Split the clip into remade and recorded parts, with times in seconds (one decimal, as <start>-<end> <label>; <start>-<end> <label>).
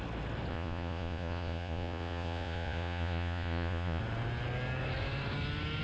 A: 0.0-0.5 recorded; 0.5-4.0 remade; 4.0-5.8 recorded